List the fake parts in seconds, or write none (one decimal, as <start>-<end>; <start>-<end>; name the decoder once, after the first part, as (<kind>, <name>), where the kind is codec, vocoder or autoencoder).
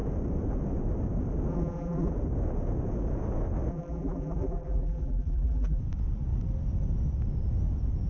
1.5-2.1 (vocoder, BigVGAN v2); 3.7-5.8